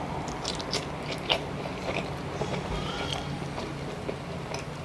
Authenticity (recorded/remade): recorded